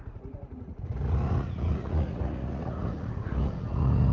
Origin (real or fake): fake